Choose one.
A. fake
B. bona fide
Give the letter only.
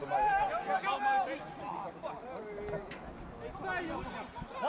B